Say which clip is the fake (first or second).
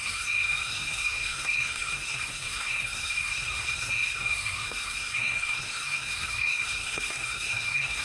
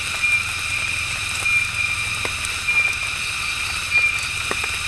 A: first